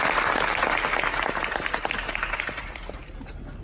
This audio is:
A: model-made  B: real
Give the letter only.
B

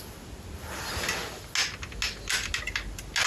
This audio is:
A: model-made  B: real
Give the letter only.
B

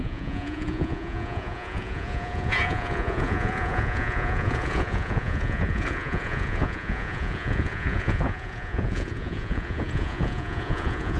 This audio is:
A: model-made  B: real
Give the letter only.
A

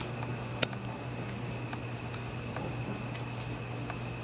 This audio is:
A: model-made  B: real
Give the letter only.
B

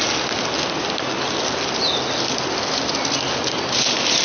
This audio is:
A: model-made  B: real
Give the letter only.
B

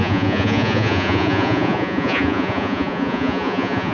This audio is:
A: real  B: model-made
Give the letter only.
B